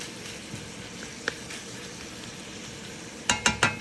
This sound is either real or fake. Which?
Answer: real